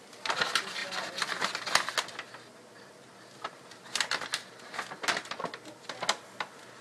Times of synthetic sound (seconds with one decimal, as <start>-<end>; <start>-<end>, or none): none

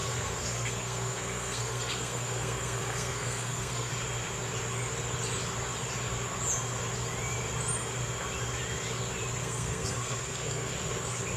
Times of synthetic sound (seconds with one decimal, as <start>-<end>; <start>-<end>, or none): 0.0-3.9; 9.4-10.7

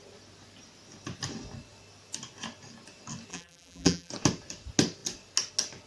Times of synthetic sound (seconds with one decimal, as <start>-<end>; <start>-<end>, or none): 3.3-4.1

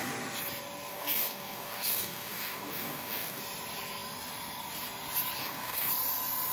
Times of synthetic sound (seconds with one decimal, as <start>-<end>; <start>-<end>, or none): 0.9-3.4; 5.4-5.9

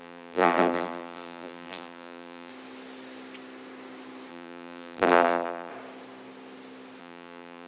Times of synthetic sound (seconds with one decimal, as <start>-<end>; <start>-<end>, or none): 0.0-2.5; 4.3-5.7; 7.0-7.7

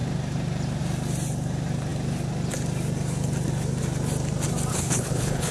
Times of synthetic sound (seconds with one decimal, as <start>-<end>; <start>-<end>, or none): 4.7-5.5

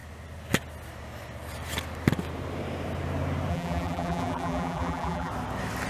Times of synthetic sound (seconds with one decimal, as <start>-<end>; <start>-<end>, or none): 3.5-5.3